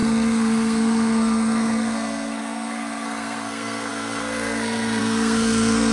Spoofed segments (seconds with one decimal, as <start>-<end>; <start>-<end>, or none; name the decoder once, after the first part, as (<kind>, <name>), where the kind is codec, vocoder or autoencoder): 0.0-5.9 (codec, SNAC)